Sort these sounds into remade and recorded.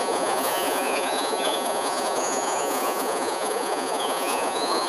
remade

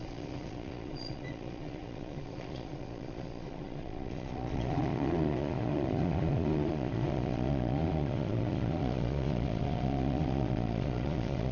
remade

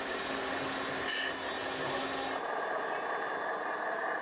recorded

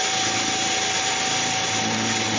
recorded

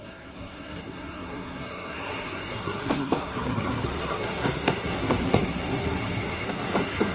remade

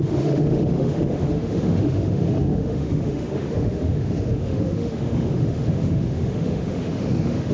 remade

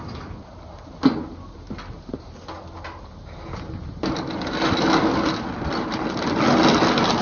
recorded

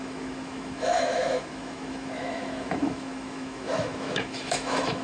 remade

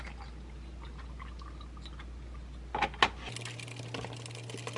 recorded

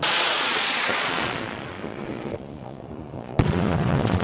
remade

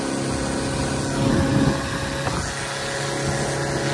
recorded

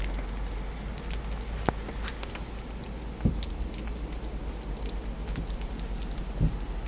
recorded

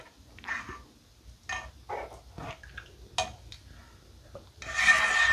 recorded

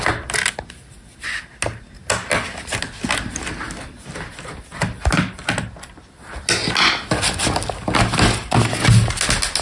recorded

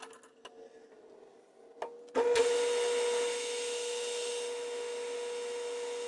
recorded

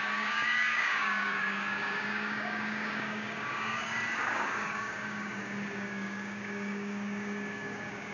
remade